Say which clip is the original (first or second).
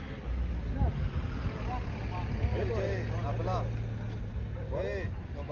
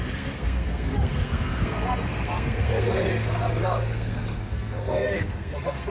first